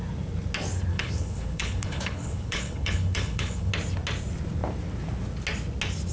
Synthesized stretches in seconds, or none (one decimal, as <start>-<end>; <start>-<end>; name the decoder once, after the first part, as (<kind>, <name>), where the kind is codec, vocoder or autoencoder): 0.9-3.7 (codec, HILCodec)